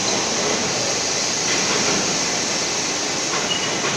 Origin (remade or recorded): recorded